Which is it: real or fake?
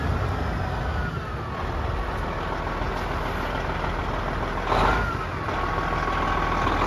real